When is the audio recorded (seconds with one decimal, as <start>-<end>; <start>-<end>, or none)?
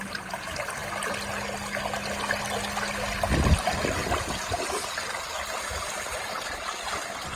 0.0-7.4